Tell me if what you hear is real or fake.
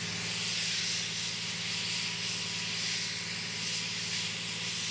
real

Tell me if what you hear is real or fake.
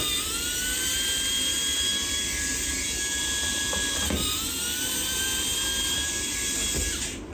real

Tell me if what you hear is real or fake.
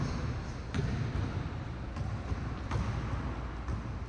real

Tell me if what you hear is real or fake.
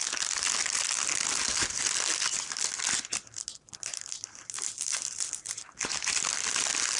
real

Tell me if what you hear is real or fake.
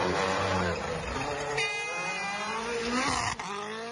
real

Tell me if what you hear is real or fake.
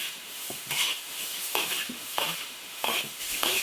fake